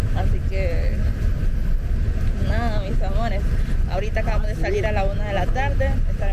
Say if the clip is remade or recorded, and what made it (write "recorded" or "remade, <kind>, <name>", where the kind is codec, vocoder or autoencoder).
recorded